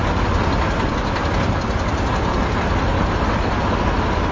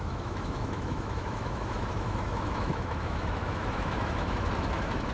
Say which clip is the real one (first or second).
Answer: first